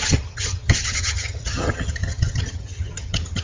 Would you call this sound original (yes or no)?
no